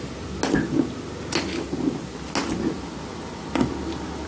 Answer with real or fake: real